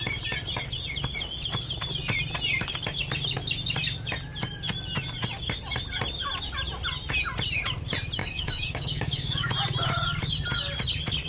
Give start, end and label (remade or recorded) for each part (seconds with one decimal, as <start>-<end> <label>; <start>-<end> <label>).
0.0-8.2 recorded; 8.2-9.5 remade; 9.5-11.3 recorded